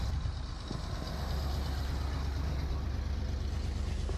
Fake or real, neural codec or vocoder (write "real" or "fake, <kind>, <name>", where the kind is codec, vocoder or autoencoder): real